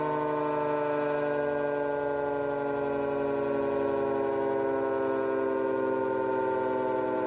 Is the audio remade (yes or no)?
no